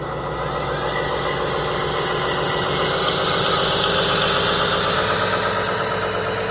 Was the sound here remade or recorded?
recorded